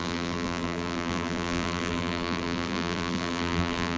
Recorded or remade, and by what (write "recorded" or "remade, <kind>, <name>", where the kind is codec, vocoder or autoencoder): remade, vocoder, BigVGAN v2